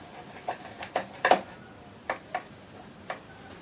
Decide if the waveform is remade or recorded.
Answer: recorded